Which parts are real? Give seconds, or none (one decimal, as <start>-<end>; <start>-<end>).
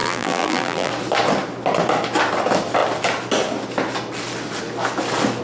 0.9-5.4